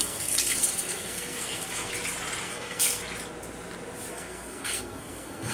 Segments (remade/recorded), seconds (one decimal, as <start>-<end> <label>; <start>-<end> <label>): 0.0-1.9 remade; 1.9-2.4 recorded; 2.4-3.0 remade; 3.0-4.1 recorded; 4.1-5.5 remade

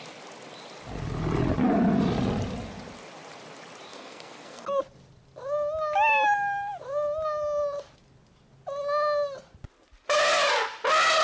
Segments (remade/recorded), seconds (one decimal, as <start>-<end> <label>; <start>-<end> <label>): 0.0-3.9 recorded; 3.9-4.8 remade; 4.8-11.2 recorded